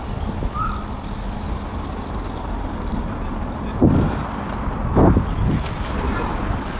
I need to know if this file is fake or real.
real